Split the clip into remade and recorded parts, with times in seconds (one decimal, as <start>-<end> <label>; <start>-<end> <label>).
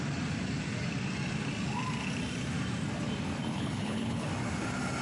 0.0-3.5 recorded; 3.5-4.3 remade; 4.3-5.0 recorded